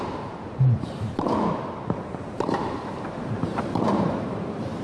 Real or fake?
fake